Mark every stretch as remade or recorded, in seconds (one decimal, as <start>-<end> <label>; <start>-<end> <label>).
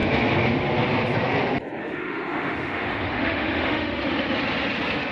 0.0-1.8 recorded; 1.8-4.0 remade; 4.0-5.1 recorded